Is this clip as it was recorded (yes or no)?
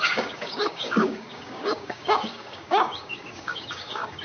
no